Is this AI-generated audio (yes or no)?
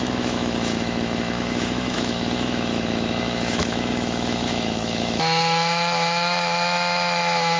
yes